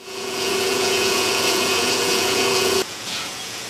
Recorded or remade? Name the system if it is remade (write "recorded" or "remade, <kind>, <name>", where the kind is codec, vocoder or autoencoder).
remade, vocoder, Vocos